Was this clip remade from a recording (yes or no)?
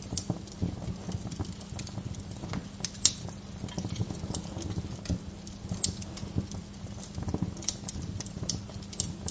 no